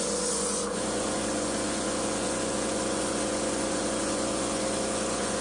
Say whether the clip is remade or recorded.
remade